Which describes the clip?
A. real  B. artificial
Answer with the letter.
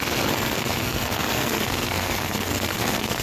B